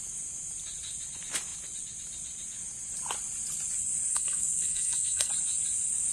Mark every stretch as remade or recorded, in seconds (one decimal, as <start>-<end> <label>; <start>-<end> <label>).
0.0-4.1 recorded; 4.1-5.3 remade; 5.3-6.1 recorded